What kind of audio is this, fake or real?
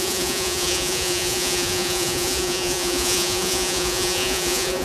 fake